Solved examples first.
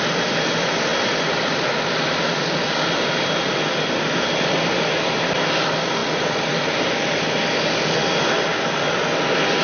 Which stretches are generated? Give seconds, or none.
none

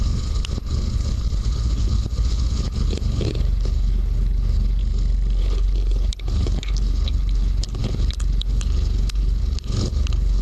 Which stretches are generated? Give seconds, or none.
0.0-4.8; 5.4-10.4

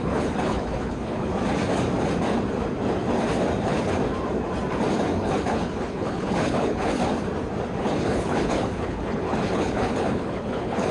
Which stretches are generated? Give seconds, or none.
0.0-1.3; 3.6-4.0; 4.9-7.0; 7.8-10.9

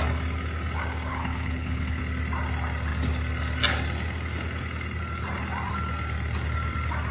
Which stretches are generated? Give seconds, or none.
1.1-2.0

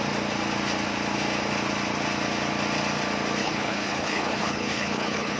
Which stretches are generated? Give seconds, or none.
3.4-5.4

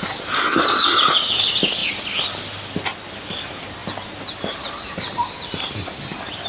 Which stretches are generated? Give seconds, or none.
none